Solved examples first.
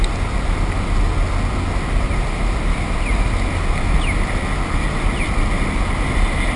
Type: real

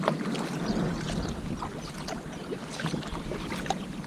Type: real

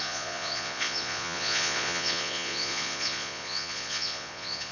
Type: fake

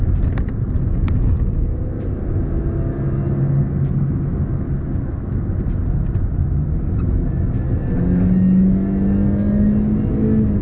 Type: real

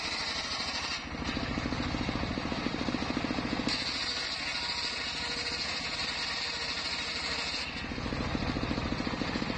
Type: real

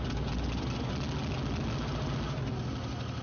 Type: real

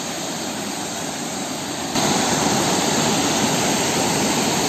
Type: fake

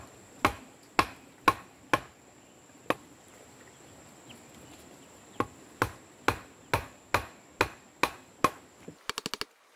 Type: real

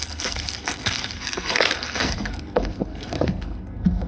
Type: fake